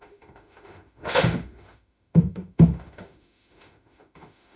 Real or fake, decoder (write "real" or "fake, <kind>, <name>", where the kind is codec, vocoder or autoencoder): fake, autoencoder, DAC-VAE